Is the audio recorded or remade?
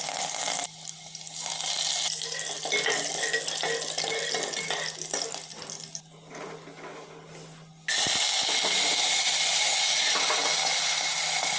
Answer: recorded